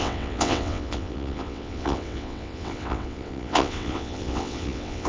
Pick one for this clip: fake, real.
fake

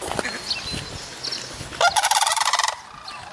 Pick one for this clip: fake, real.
real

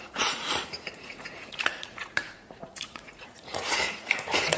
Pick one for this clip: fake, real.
fake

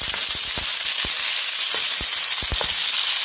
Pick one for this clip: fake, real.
real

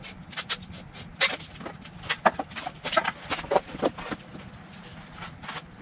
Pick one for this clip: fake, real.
real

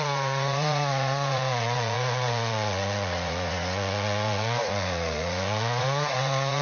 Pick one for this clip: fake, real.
fake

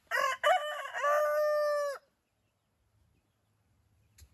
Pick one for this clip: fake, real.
real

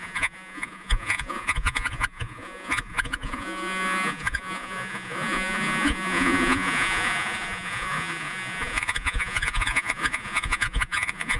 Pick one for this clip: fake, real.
fake